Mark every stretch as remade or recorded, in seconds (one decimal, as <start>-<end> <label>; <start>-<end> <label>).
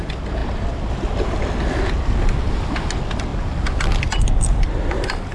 0.0-5.3 recorded